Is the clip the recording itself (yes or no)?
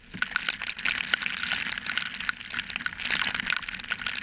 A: yes